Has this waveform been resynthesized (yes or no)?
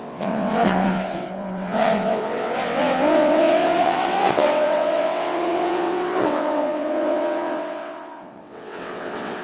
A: yes